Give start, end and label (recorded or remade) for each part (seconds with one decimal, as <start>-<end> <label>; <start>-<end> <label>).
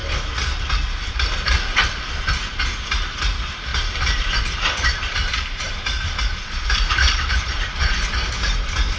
0.0-3.7 recorded; 3.7-8.3 remade; 8.3-9.0 recorded